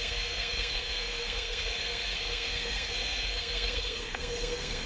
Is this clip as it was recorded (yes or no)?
no